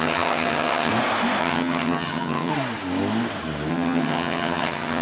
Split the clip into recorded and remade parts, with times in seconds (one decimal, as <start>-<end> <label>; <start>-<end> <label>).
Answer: 0.0-0.9 remade; 0.9-1.4 recorded; 1.4-2.5 remade; 2.5-3.7 recorded; 3.7-5.0 remade